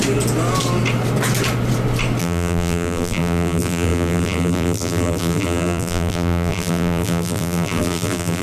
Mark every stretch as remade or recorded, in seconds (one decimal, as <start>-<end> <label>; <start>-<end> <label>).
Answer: 0.0-2.2 recorded; 2.2-8.4 remade